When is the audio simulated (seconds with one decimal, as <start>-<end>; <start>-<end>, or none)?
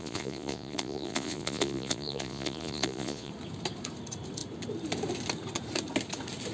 0.0-3.3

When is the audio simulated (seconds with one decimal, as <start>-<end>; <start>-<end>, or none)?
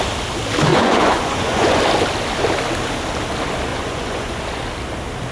0.7-1.8; 3.7-4.4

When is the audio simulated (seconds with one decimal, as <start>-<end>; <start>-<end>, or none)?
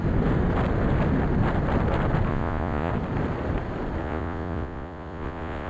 2.3-2.9; 4.0-5.7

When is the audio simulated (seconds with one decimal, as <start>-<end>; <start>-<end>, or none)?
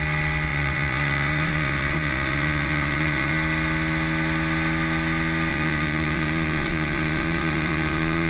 0.5-3.3; 5.5-8.3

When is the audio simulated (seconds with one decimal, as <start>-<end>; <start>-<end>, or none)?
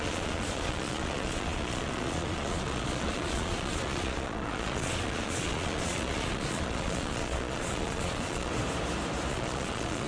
0.0-8.5; 9.3-10.1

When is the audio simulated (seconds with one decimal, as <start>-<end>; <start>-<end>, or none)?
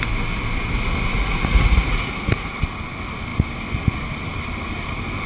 1.1-2.6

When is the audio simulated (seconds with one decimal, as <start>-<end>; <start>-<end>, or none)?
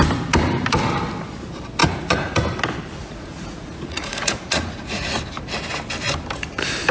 1.8-2.3; 3.0-5.2